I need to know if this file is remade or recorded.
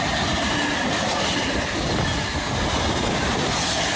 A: recorded